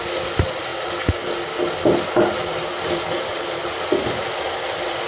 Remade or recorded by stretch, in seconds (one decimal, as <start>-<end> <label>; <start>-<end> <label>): 0.0-5.1 recorded